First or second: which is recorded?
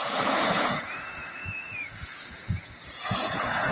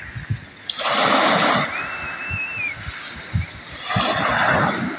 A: second